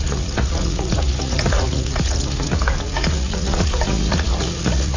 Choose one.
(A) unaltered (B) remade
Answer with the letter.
B